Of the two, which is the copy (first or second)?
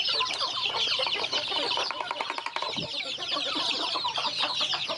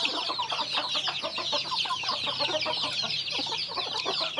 first